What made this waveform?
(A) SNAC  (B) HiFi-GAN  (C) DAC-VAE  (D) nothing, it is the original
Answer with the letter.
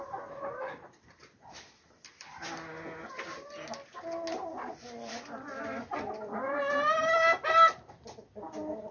D